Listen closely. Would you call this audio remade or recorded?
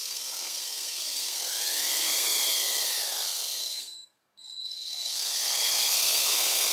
remade